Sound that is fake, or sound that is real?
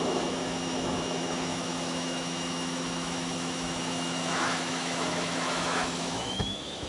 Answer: fake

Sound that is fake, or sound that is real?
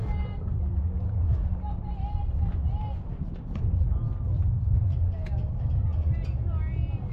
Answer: real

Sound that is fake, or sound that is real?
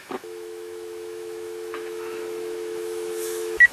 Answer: fake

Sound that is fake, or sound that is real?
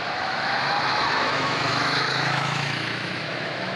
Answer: fake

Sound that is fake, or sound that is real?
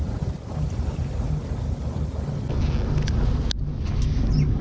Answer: real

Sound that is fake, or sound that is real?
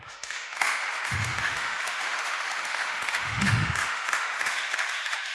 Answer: fake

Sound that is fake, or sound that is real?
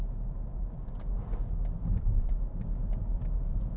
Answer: real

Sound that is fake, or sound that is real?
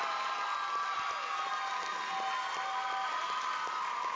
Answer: real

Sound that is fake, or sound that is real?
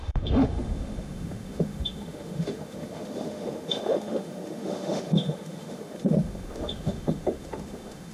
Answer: fake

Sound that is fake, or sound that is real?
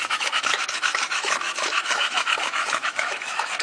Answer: fake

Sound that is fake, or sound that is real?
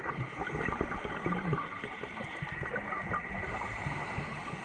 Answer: real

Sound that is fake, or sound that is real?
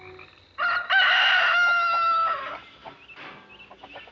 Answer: real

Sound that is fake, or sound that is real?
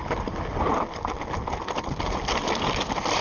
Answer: real